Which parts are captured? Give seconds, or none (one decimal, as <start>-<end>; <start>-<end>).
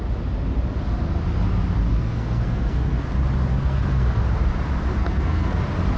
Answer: 0.0-1.9; 3.0-3.5; 4.2-5.0; 5.6-6.0